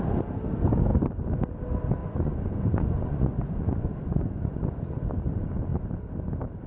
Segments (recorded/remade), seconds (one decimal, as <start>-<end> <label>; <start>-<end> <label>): 0.0-2.0 recorded; 2.0-4.6 remade; 4.6-6.7 recorded